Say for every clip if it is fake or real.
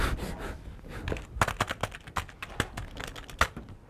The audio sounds real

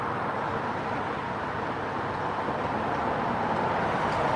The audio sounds real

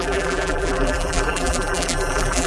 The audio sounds fake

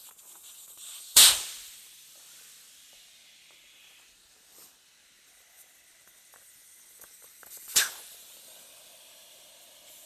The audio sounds fake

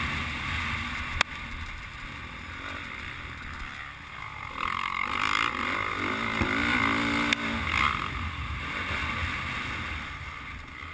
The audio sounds real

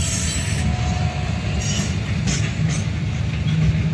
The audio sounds real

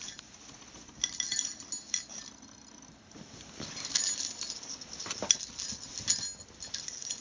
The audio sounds real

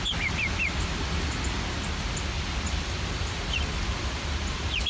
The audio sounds real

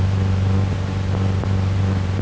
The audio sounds fake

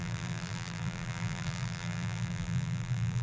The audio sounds fake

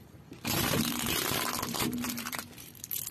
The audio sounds fake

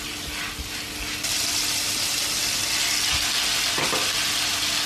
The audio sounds real